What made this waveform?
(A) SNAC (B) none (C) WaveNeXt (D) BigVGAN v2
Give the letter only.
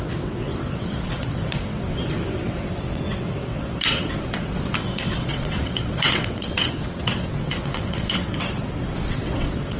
C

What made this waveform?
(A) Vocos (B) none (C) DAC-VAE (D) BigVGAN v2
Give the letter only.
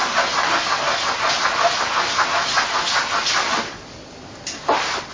B